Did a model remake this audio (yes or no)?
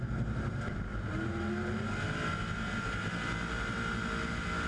no